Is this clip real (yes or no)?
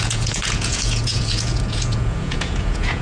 no